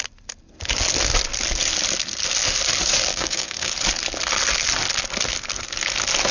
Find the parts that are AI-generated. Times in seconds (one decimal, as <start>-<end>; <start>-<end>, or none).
3.1-3.7